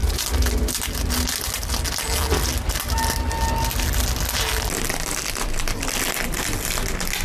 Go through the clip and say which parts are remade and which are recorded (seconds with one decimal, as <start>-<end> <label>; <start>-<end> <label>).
0.0-7.2 recorded